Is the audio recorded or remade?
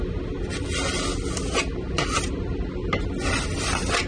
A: recorded